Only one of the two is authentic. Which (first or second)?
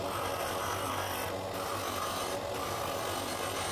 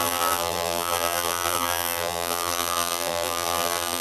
first